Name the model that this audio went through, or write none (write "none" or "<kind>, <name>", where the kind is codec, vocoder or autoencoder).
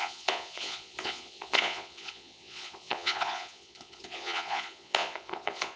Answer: vocoder, Vocos